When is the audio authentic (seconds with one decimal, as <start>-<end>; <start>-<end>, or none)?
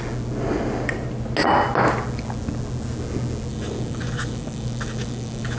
0.0-3.5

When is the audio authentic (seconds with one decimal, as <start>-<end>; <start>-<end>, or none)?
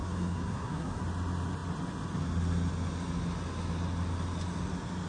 1.0-5.1